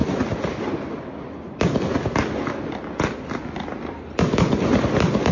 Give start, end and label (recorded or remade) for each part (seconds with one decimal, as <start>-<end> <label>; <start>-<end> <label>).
0.0-5.3 recorded